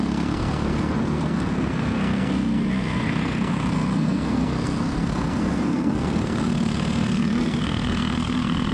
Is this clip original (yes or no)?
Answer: no